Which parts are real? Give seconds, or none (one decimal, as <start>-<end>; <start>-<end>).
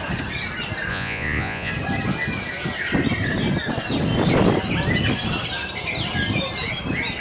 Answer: 0.0-0.9; 1.7-7.2